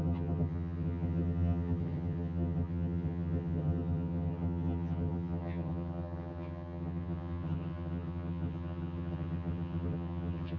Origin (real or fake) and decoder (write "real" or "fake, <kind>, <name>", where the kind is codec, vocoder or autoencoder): fake, vocoder, HiFi-GAN